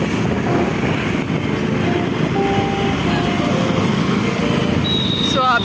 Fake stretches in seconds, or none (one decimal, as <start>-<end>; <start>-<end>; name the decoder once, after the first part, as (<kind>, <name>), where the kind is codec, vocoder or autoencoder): 3.9-4.4 (codec, DAC)